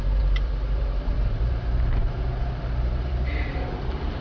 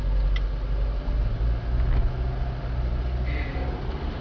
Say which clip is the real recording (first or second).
second